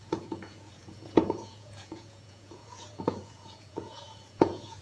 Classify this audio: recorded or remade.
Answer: remade